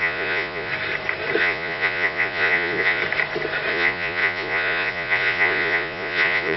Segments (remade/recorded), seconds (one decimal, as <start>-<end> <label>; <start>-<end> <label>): 0.0-0.7 remade; 0.7-1.4 recorded; 1.4-3.0 remade; 3.0-3.7 recorded; 3.7-6.6 remade